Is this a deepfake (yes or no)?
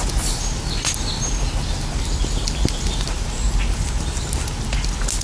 no